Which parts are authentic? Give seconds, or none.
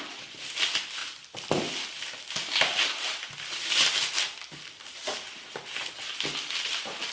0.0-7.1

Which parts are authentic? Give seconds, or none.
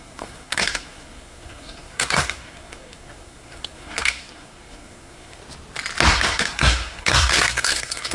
5.4-6.1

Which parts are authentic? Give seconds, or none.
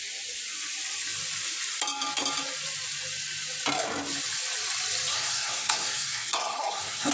0.0-5.1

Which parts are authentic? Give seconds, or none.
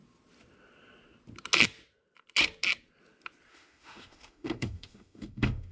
0.0-3.5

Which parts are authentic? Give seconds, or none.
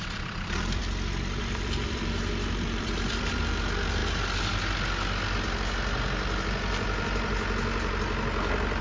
0.8-1.4; 4.0-8.8